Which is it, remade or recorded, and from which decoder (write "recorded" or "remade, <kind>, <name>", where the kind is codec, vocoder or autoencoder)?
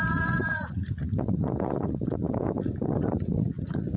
remade, vocoder, Vocos